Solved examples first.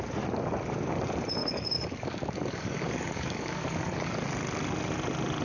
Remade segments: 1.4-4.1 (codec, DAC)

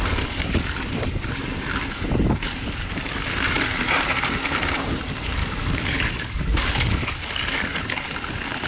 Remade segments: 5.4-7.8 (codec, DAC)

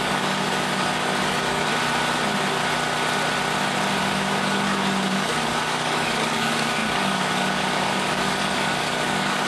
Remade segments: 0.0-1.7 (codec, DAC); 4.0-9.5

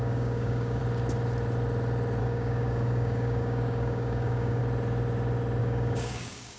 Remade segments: 0.0-0.8 (codec, DAC); 2.2-4.6; 5.6-6.6

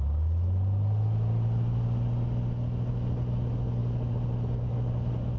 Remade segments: none

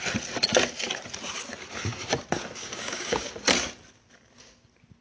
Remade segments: 2.6-3.3 (codec, DAC)